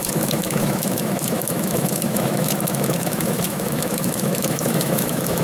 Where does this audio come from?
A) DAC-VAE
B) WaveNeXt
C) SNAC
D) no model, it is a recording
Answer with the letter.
A